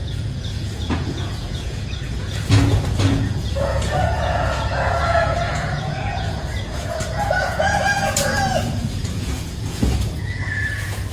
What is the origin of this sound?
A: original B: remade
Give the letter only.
B